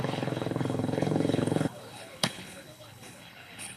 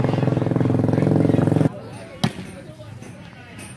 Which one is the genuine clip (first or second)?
second